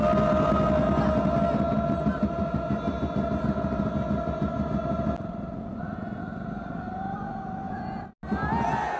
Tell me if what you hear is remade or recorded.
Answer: recorded